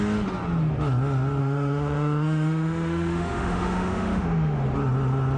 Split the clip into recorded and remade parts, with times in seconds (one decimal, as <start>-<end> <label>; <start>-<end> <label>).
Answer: 0.0-1.4 recorded; 1.4-4.6 remade; 4.6-5.4 recorded